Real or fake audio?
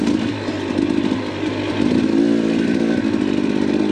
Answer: real